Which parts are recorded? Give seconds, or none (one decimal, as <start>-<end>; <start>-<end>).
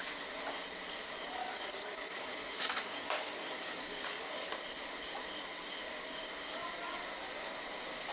0.0-1.4; 4.5-8.1